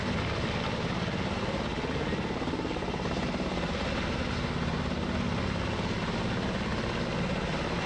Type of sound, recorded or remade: recorded